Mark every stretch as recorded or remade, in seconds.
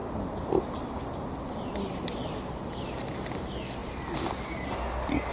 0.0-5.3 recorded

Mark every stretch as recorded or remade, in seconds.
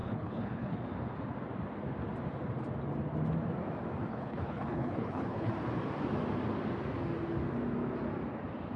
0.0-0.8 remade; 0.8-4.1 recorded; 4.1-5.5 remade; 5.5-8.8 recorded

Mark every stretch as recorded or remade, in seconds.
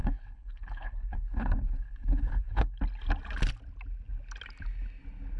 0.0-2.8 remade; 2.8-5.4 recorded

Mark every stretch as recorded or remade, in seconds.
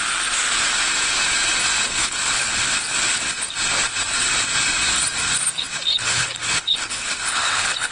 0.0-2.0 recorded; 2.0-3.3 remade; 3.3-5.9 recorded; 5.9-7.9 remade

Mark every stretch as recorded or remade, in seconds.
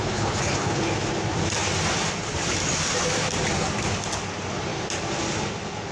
0.0-0.8 remade; 0.8-5.9 recorded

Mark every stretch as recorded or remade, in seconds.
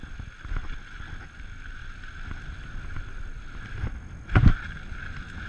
0.0-5.5 recorded